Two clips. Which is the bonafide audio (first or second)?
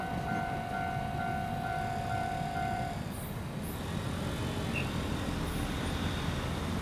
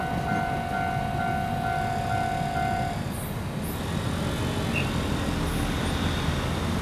second